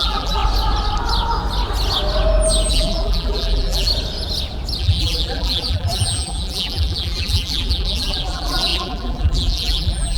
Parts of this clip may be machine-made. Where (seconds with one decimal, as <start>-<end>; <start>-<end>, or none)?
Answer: 0.0-0.4; 2.7-3.9; 4.8-10.2